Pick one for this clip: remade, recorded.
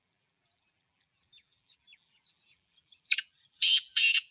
remade